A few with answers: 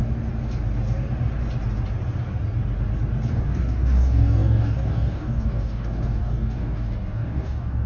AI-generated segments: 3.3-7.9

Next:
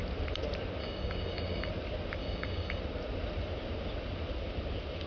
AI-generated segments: 0.8-1.7; 2.2-2.8

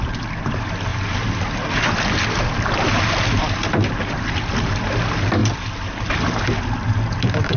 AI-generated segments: none